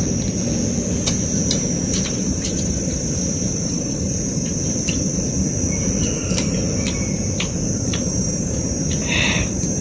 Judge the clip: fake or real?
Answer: fake